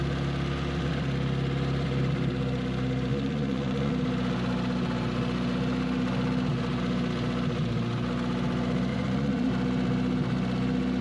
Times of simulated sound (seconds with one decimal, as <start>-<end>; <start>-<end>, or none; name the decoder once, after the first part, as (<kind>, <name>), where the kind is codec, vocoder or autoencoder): 3.1-3.9 (vocoder, Vocos); 8.9-9.5